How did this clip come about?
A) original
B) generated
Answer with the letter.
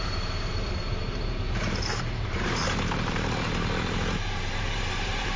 B